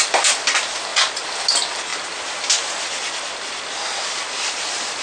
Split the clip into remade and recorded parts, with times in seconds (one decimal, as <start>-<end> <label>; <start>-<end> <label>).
0.0-5.0 recorded